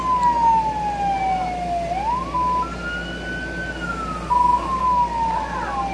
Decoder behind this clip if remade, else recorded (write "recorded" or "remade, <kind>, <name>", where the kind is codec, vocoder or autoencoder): recorded